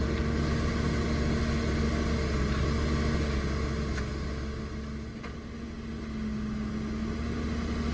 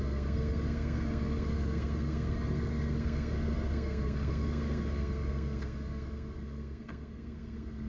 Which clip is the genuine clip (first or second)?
first